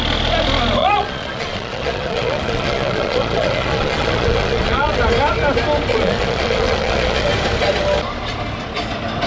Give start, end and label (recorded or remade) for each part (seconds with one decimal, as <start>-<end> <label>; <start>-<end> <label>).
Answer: 0.0-0.8 recorded; 0.8-5.0 remade; 5.0-5.9 recorded; 5.9-7.3 remade; 7.3-9.3 recorded